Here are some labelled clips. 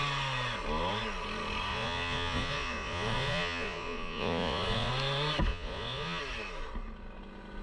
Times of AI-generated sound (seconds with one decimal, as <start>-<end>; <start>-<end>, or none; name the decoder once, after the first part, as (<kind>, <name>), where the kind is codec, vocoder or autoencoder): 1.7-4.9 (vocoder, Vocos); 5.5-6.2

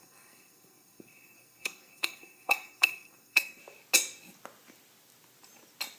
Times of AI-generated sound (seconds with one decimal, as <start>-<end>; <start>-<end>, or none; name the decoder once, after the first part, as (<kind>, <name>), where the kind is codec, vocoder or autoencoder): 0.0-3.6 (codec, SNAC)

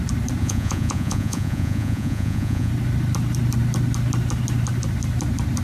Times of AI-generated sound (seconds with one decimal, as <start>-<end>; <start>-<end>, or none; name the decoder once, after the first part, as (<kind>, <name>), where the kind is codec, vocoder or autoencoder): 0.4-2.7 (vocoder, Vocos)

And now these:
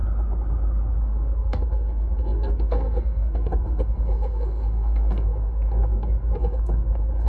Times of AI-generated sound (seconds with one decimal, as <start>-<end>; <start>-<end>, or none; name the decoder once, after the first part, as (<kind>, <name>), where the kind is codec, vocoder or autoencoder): 1.0-7.3 (codec, SNAC)

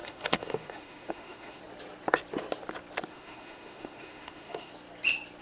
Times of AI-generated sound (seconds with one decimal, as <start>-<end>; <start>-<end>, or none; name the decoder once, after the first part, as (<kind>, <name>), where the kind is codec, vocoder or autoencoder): 0.0-1.6 (autoencoder, DAC-VAE); 3.1-4.7

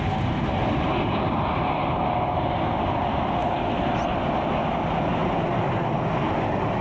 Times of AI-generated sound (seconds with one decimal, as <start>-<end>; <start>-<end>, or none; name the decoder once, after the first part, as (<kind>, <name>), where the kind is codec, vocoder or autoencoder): none